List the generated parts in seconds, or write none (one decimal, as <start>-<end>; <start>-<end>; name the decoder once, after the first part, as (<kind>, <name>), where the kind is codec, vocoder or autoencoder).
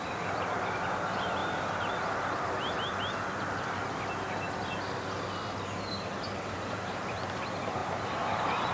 0.0-1.4 (vocoder, BigVGAN v2); 6.5-8.7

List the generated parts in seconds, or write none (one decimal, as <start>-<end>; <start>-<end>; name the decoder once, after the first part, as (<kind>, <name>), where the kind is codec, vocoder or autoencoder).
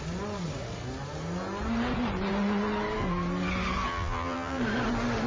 3.9-4.6 (vocoder, BigVGAN v2)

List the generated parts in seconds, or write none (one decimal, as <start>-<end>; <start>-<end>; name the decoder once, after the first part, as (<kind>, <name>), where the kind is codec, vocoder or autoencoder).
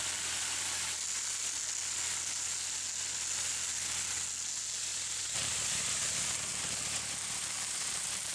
4.9-8.3 (vocoder, BigVGAN v2)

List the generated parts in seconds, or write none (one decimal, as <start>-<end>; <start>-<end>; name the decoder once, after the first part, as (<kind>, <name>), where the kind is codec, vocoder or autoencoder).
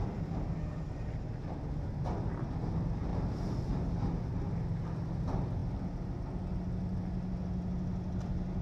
3.1-3.7 (vocoder, BigVGAN v2)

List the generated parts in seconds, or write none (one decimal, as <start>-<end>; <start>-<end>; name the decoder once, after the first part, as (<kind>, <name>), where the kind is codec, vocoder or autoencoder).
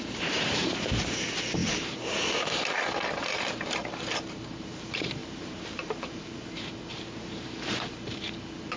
0.0-8.8 (vocoder, BigVGAN v2)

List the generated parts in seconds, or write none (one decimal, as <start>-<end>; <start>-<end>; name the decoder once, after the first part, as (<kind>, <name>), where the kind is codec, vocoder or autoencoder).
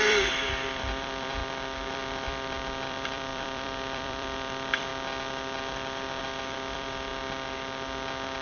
0.0-1.4 (vocoder, BigVGAN v2); 1.9-4.9; 6.2-7.1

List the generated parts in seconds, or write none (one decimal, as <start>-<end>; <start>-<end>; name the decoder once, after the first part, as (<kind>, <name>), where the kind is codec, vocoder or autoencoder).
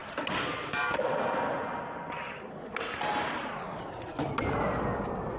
none